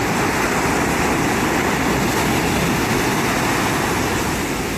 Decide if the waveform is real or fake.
real